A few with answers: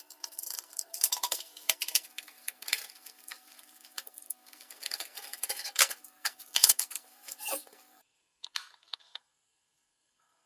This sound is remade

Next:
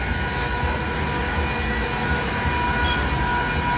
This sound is recorded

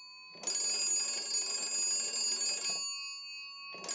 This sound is recorded